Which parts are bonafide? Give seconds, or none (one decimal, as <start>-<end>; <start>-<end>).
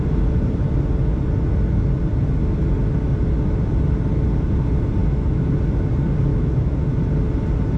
0.0-5.0; 5.5-6.3; 6.9-7.8